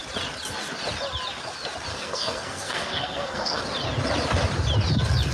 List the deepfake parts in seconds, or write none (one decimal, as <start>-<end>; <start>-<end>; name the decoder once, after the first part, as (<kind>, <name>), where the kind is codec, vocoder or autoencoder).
1.9-3.6 (codec, SNAC)